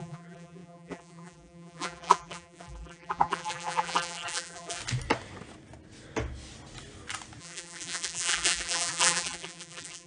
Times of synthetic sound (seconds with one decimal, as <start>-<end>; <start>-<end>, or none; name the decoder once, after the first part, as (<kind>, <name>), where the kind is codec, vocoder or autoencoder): 0.0-4.8 (vocoder, BigVGAN v2); 7.4-10.1